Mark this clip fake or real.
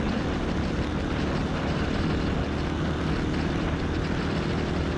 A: real